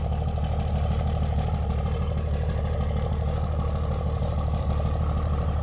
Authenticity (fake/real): fake